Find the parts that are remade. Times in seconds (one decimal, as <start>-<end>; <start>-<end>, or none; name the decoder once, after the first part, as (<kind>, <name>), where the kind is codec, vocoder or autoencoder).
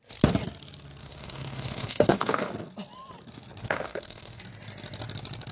1.0-2.5 (autoencoder, DAC-VAE); 3.6-4.4